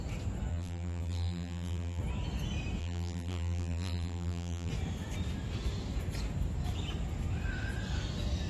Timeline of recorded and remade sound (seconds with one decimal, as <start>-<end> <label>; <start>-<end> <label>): 0.0-0.5 recorded; 0.5-2.0 remade; 2.0-2.8 recorded; 2.8-4.7 remade; 4.7-8.5 recorded